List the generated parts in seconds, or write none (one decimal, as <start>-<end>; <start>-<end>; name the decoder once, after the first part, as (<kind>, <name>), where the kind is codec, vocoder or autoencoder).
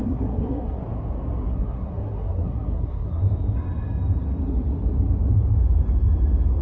0.0-0.8 (codec, SNAC); 1.5-3.2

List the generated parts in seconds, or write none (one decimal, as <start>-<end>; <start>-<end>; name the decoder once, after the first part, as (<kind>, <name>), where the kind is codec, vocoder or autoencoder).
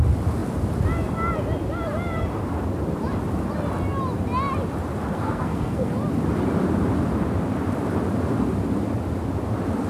5.1-5.9 (codec, SNAC)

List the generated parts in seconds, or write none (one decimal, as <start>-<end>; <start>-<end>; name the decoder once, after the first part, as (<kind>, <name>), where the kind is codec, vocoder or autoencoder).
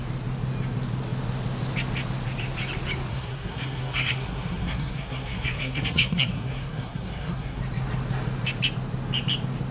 3.1-7.6 (codec, SNAC)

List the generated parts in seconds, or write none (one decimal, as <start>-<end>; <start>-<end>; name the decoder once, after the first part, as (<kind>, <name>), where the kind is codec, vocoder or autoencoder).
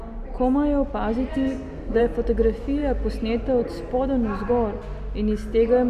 1.3-2.0 (codec, SNAC)